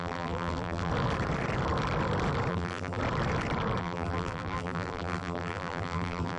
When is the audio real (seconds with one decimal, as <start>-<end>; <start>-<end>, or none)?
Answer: 0.9-2.5; 3.0-3.8